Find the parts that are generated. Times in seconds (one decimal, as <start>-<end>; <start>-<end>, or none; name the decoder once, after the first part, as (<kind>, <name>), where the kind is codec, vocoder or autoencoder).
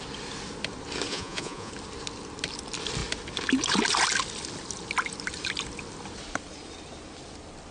1.1-1.7 (vocoder, Vocos)